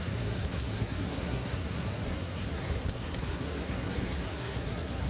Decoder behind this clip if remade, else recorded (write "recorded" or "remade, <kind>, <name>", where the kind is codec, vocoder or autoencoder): remade, codec, SNAC